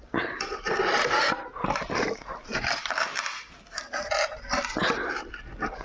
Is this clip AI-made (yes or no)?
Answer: no